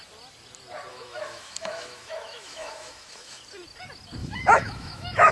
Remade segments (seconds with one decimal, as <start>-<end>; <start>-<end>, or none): 0.9-3.4; 4.2-5.3